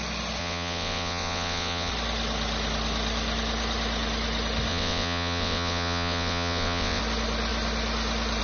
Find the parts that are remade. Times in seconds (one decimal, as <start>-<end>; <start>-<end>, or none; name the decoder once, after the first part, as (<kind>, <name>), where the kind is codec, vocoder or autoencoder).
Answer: 0.4-1.9 (vocoder, WaveNeXt); 4.7-7.0